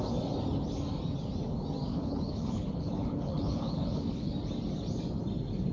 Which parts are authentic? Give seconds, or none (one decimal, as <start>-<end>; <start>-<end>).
0.0-1.9; 4.3-5.7